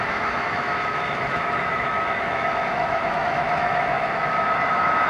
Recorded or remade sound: remade